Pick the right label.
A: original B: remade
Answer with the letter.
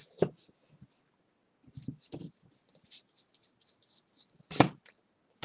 A